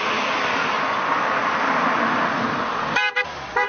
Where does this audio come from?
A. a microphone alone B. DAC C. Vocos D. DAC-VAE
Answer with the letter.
A